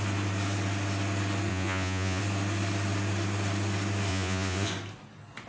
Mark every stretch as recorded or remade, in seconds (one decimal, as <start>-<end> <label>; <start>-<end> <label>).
0.0-1.5 recorded; 1.5-2.2 remade; 2.2-4.1 recorded; 4.1-4.7 remade; 4.7-5.5 recorded